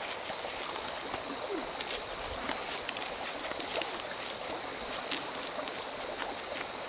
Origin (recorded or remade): recorded